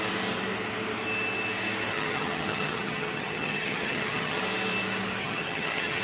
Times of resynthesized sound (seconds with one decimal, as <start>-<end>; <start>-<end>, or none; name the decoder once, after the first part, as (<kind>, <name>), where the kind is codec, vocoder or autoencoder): 1.9-4.4 (vocoder, HiFi-GAN); 5.2-6.0